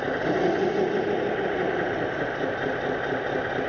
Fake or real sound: real